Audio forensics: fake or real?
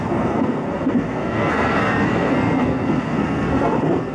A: fake